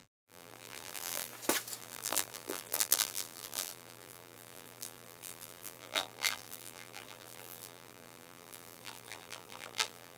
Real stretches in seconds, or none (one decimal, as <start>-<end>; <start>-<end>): 1.3-1.8